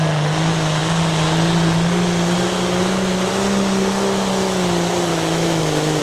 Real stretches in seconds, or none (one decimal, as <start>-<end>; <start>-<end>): 0.0-5.1